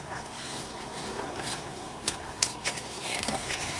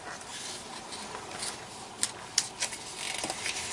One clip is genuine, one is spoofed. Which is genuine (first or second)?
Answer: second